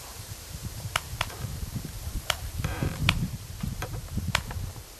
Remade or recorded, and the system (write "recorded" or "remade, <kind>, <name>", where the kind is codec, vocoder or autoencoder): remade, vocoder, BigVGAN v2